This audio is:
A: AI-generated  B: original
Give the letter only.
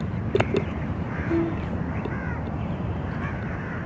A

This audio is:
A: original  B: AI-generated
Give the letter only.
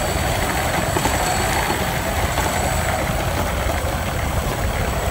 A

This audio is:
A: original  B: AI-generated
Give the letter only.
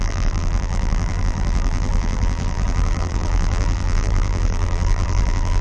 B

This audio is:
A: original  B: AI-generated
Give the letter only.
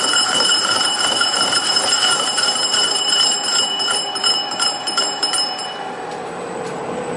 B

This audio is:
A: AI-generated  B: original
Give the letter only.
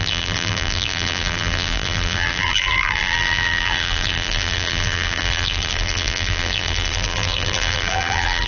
A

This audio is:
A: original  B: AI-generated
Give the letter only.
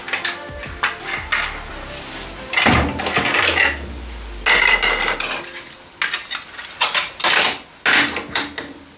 A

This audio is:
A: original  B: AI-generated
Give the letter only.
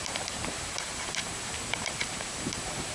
B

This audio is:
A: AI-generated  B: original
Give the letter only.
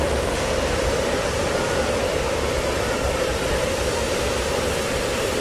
A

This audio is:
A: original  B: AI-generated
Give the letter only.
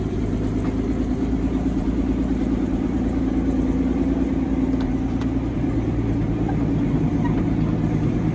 B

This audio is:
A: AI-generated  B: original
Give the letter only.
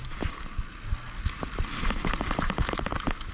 B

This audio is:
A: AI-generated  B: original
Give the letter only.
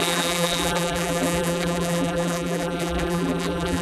A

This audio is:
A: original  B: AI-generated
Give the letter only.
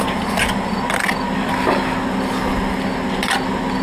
A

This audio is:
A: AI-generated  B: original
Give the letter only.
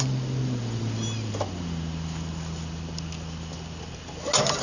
B